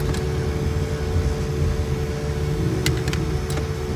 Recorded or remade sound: recorded